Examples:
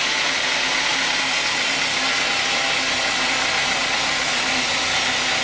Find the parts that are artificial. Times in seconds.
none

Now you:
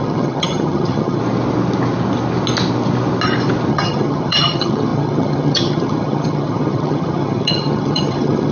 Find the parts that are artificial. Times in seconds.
0.0-1.2; 3.7-8.5